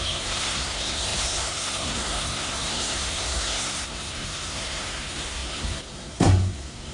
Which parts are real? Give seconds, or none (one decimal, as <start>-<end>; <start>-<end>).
none